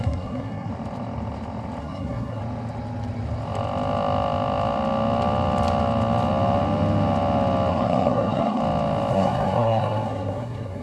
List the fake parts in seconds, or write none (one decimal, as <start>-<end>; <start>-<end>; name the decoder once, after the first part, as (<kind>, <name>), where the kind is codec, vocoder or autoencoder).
0.0-0.7 (codec, SNAC); 1.8-2.4; 7.7-8.6; 9.1-10.8